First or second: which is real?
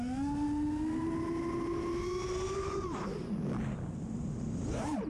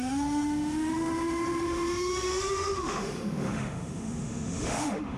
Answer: first